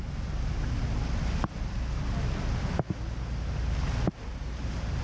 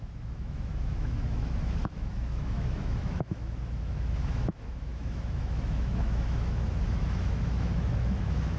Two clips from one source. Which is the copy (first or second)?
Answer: second